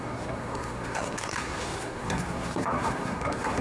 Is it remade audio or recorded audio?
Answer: remade